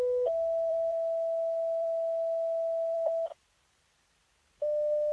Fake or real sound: real